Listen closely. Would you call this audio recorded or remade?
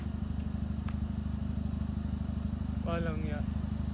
recorded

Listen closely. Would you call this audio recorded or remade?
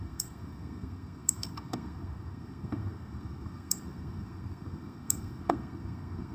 remade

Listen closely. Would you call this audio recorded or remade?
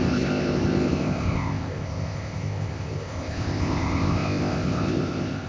remade